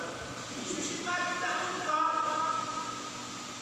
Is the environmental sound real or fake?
real